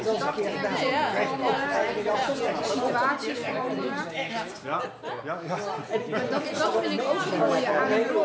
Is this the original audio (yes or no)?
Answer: yes